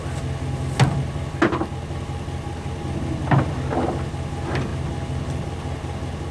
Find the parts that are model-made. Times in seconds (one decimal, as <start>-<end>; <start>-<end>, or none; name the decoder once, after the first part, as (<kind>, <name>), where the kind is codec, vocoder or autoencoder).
none